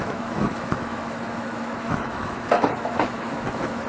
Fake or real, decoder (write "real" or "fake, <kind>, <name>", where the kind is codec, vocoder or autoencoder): fake, autoencoder, DAC-VAE